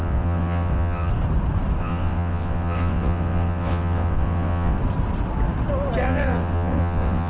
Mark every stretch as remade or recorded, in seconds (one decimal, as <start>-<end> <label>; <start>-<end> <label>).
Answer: 0.0-1.1 remade; 1.1-1.8 recorded; 1.8-4.8 remade; 4.8-6.0 recorded; 6.0-7.3 remade